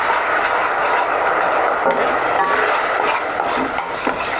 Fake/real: real